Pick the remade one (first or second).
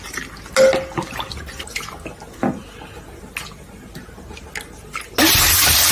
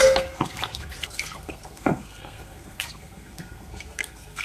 second